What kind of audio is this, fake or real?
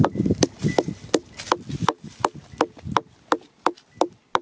real